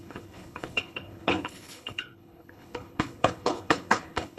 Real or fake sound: fake